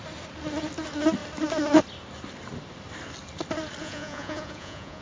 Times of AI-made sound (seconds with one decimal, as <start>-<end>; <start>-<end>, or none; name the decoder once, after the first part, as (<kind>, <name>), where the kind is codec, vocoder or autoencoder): 3.8-5.0 (vocoder, Vocos)